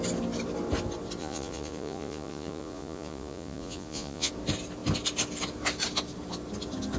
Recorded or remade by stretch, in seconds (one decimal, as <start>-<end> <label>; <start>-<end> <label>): 0.0-1.2 recorded; 1.2-4.3 remade; 4.3-7.0 recorded